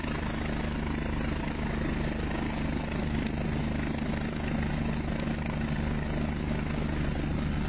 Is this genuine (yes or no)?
yes